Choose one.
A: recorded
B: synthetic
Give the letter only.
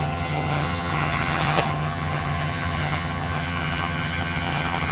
B